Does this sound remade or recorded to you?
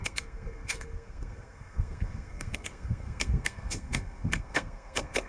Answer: remade